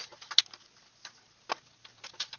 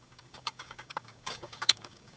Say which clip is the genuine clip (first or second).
first